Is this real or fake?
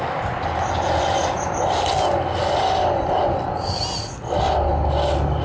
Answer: real